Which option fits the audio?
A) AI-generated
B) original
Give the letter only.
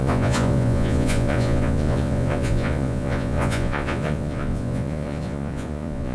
A